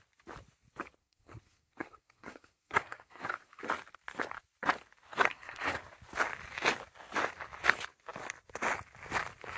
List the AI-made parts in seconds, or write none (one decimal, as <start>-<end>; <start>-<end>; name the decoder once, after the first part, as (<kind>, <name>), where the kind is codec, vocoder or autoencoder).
1.0-3.6 (codec, SNAC); 5.1-5.8